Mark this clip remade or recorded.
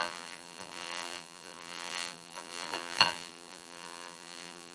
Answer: remade